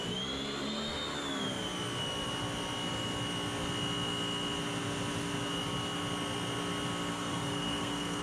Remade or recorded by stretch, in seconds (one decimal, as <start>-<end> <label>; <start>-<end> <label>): 0.0-7.1 recorded; 7.1-8.2 remade